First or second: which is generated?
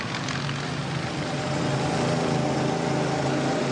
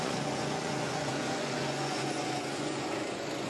second